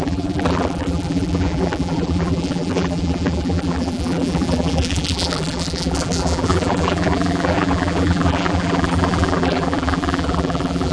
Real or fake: fake